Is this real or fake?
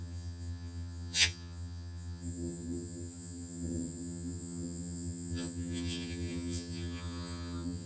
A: fake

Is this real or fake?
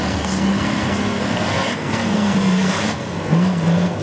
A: fake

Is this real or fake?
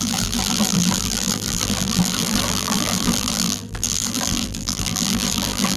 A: fake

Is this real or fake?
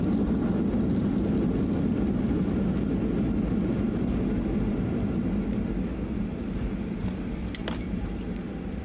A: real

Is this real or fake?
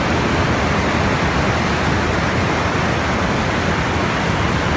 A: real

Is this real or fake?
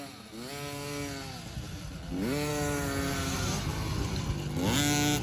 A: real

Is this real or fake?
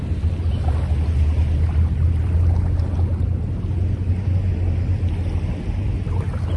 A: real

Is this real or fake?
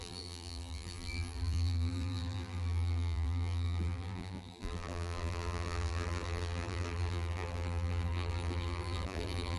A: fake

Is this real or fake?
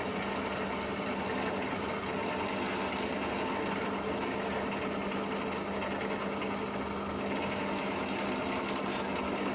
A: real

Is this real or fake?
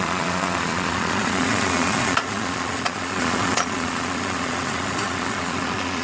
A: fake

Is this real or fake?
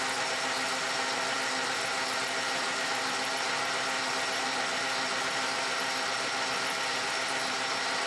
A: real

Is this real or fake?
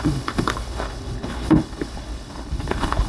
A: fake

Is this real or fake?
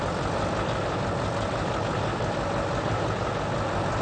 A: real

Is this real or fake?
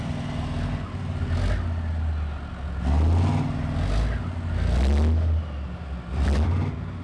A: real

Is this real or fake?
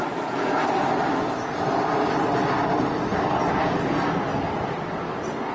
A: real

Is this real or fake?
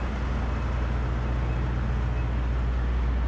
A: real